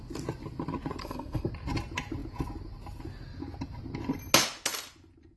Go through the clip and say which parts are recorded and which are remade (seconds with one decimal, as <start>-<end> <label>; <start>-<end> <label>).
0.0-1.0 recorded; 1.0-1.5 remade; 1.5-5.4 recorded